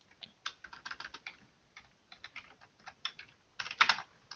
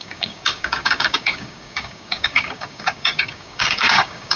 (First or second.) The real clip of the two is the first